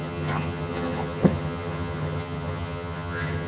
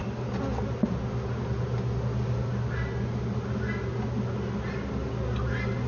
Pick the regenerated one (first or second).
first